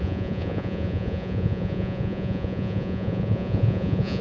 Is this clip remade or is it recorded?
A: remade